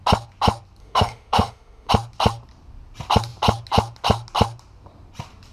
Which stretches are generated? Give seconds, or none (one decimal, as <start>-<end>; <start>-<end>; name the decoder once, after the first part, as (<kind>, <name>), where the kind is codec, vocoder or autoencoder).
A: 0.8-1.9 (autoencoder, DAC-VAE)